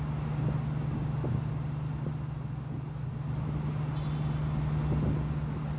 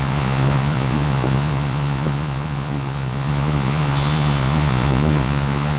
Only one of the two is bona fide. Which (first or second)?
first